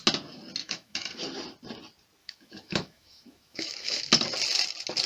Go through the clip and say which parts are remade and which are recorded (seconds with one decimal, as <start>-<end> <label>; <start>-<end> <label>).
0.0-0.6 recorded; 0.6-1.1 remade; 1.1-2.2 recorded; 2.2-4.0 remade; 4.0-5.1 recorded